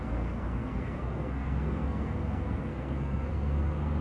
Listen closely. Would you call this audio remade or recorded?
remade